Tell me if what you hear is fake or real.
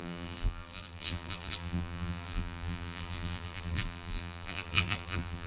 fake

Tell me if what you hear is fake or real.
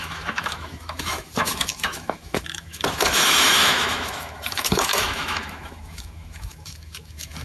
fake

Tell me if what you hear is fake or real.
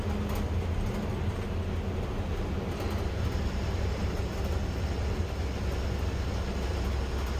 real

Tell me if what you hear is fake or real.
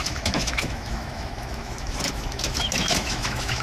fake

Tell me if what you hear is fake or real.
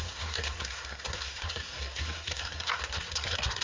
fake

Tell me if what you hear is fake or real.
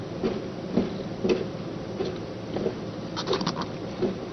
fake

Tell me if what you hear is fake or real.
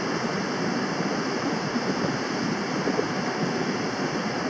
real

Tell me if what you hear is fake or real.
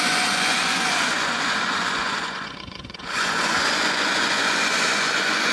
fake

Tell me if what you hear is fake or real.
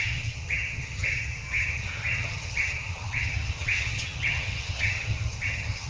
fake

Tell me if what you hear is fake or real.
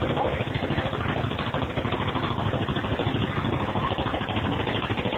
real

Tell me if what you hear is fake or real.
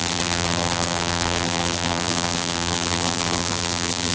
fake